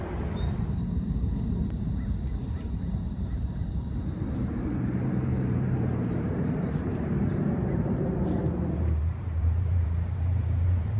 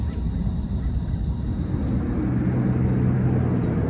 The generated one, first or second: first